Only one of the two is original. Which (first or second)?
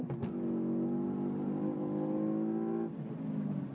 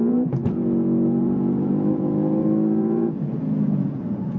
first